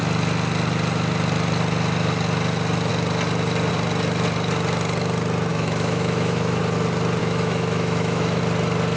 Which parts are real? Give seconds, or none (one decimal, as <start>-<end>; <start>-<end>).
0.0-5.5; 6.6-7.2; 8.4-9.0